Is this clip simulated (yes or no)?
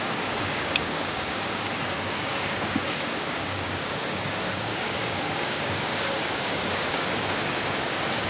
yes